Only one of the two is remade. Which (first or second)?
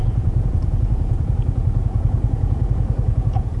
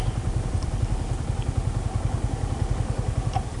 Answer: first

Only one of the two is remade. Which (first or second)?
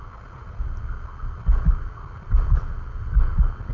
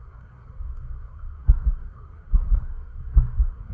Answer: second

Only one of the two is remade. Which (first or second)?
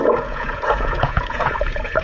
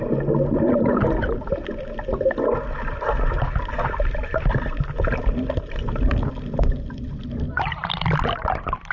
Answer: first